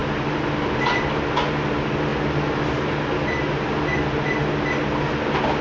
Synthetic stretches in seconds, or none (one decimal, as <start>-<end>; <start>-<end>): none